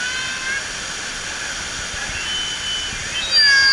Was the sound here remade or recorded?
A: recorded